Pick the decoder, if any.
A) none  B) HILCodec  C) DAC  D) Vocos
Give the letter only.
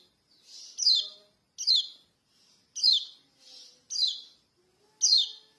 A